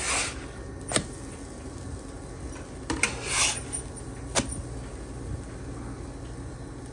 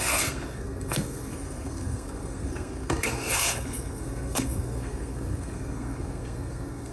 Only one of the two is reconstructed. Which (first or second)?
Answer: second